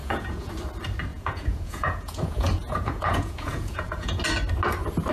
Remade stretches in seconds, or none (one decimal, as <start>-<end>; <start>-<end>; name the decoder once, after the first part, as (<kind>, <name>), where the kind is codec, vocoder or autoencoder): 0.0-0.5 (vocoder, Vocos); 1.1-4.2